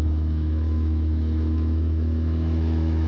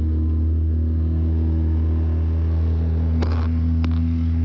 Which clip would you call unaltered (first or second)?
second